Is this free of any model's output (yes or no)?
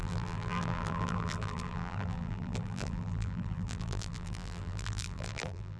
no